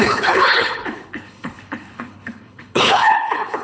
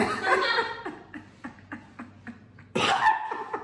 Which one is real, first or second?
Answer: second